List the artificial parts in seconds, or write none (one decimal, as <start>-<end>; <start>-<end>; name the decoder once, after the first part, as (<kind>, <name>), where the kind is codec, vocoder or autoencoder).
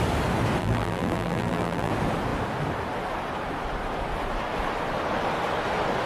0.6-1.9 (vocoder, BigVGAN v2)